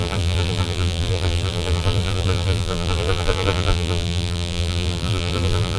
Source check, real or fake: fake